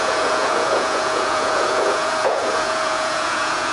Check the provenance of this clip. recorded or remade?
remade